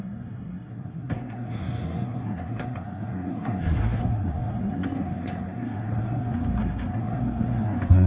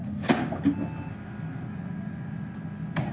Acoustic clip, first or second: second